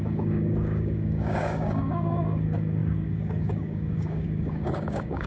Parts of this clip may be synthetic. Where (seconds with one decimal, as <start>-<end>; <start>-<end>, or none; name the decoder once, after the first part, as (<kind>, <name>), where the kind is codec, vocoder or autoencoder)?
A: 0.0-5.3 (codec, DAC)